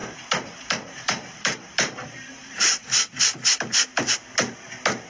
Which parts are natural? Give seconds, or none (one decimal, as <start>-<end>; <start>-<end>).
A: 2.8-5.1

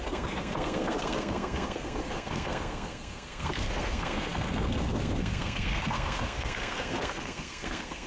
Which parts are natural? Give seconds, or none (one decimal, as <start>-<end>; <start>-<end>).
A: none

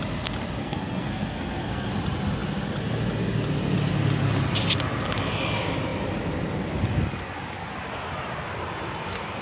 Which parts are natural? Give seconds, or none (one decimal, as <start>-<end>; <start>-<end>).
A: 0.0-0.6; 1.9-9.4

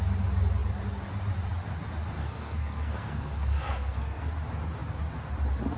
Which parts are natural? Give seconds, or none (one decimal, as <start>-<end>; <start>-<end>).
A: 0.0-2.2; 4.3-5.8

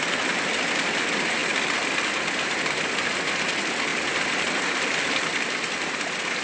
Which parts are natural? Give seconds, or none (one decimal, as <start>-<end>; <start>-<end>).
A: 0.0-6.4

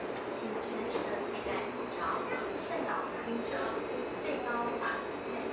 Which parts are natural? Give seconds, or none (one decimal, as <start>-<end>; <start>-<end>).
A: 0.0-1.0; 1.8-5.5

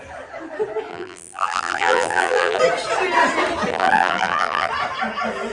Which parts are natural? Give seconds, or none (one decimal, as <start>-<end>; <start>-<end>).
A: 0.0-0.9; 2.6-3.7; 4.7-5.5

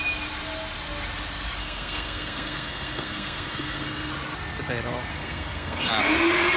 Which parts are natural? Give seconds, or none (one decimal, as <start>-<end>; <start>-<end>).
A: 0.0-1.6; 4.1-5.1; 5.9-6.6